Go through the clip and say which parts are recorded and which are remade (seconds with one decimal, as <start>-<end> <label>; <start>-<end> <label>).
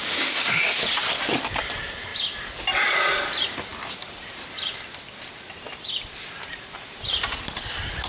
0.0-0.6 remade; 0.6-8.1 recorded